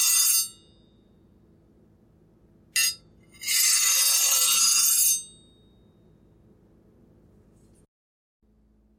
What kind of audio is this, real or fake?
real